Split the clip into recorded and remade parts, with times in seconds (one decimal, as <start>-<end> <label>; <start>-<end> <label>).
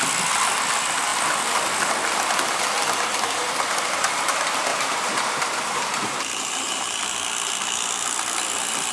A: 0.0-4.7 recorded; 4.7-7.0 remade; 7.0-8.9 recorded